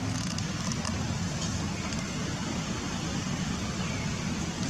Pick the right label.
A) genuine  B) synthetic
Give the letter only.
A